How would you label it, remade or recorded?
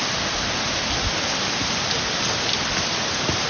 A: recorded